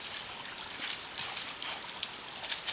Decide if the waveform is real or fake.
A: real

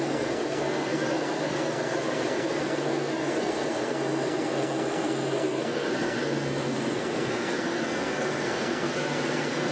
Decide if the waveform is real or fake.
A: fake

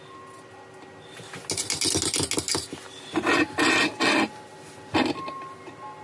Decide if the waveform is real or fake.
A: real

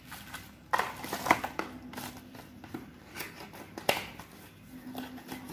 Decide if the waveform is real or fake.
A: real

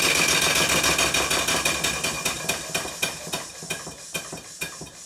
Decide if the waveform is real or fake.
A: real